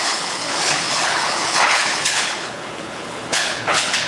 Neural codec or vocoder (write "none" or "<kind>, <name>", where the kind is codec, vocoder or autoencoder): codec, HILCodec